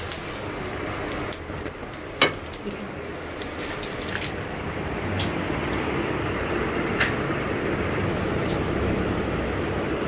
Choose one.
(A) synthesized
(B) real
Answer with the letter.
B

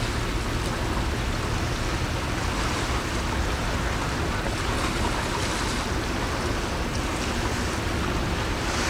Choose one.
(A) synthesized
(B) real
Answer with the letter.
B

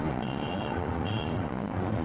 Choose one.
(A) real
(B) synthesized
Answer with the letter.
B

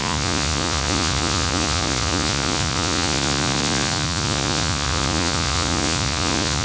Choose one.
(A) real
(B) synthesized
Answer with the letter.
B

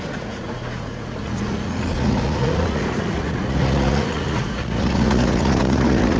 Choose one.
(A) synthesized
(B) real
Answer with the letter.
A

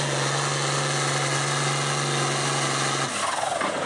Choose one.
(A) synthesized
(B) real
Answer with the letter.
B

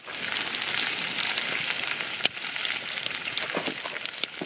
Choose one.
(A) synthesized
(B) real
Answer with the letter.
B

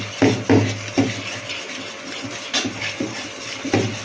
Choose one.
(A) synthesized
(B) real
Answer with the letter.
B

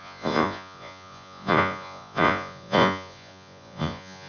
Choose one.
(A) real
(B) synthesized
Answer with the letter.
B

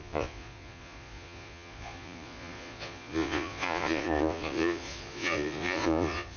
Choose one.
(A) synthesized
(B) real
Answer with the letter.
A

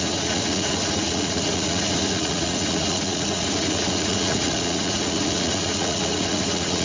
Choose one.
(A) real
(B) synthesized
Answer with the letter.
B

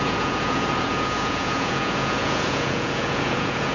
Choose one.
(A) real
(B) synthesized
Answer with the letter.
B